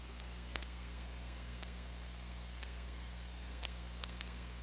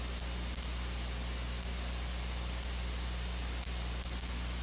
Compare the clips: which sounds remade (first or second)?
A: first